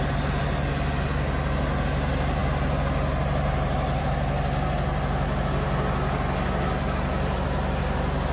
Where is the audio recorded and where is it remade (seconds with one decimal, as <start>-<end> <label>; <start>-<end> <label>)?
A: 0.0-8.3 recorded